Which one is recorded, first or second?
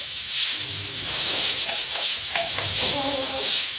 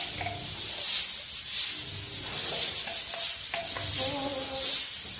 second